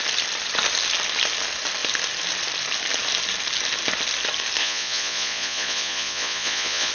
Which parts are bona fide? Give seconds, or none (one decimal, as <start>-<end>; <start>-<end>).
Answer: 0.0-4.6